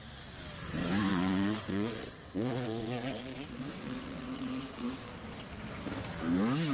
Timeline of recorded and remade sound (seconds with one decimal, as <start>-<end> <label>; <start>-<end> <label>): 0.0-1.1 recorded; 1.1-5.1 remade; 5.1-6.7 recorded